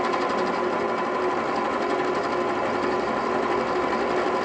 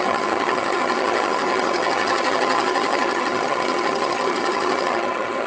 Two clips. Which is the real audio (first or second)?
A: first